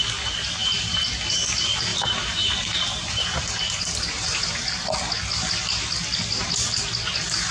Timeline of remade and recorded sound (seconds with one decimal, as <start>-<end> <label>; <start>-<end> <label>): 0.0-1.9 recorded; 1.9-4.4 remade; 4.4-7.5 recorded